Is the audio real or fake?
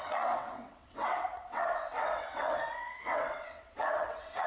fake